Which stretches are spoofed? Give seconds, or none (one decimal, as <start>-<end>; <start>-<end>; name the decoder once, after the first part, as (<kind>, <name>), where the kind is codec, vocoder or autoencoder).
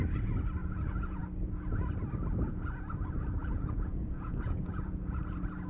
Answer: 0.6-1.2 (vocoder, Vocos); 3.4-5.2